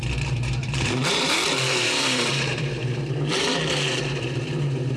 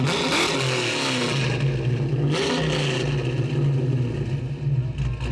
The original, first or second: second